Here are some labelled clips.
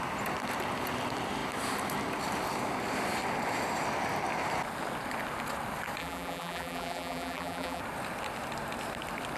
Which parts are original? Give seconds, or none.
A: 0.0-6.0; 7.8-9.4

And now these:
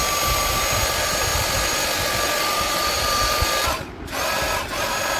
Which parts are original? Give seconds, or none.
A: 0.0-1.3; 4.4-5.2

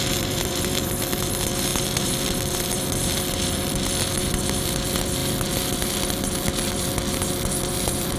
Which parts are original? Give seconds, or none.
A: none